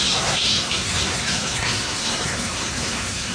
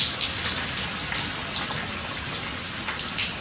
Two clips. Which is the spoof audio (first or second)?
first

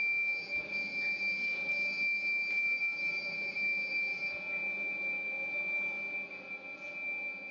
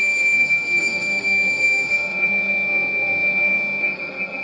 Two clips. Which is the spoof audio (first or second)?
second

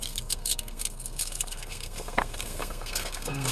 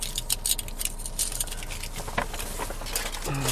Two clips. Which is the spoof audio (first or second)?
first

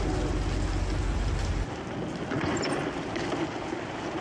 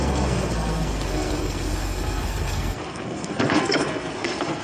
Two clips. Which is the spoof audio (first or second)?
second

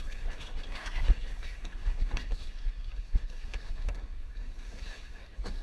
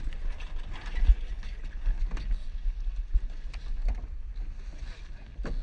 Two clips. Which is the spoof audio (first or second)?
first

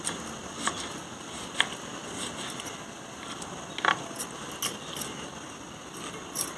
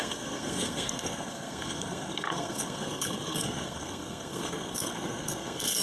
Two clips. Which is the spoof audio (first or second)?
second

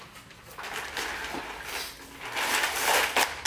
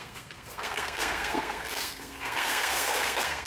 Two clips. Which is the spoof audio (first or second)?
second